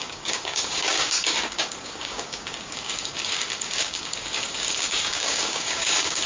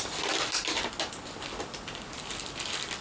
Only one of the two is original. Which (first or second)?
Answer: second